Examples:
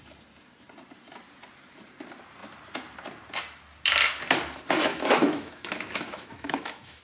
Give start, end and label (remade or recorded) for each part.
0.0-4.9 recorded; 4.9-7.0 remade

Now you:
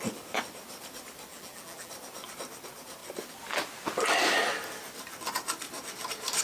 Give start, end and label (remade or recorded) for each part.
0.0-1.3 recorded; 1.3-1.9 remade; 1.9-6.4 recorded

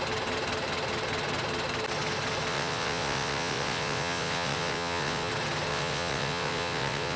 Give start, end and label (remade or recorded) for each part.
0.0-2.5 recorded; 2.5-5.3 remade; 5.3-5.7 recorded; 5.7-7.2 remade

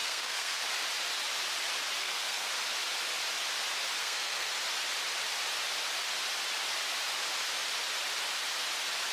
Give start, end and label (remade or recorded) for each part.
0.0-0.6 remade; 0.6-2.0 recorded; 2.0-2.5 remade; 2.5-4.0 recorded; 4.0-4.5 remade; 4.5-9.1 recorded